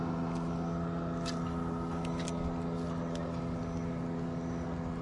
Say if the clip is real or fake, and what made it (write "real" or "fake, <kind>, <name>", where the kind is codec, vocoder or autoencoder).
real